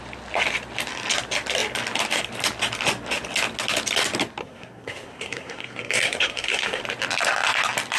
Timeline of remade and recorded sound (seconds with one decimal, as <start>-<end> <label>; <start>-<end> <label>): 0.0-4.4 recorded; 4.4-6.8 remade; 6.8-8.0 recorded